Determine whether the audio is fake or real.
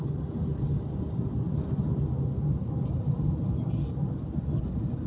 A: real